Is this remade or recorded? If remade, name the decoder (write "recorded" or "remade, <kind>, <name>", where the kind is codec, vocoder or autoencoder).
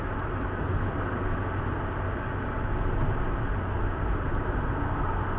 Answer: recorded